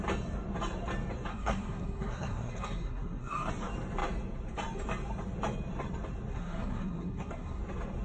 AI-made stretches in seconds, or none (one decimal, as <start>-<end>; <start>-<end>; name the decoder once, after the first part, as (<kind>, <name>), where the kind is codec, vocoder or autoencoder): 1.3-3.5 (codec, SNAC); 6.3-7.6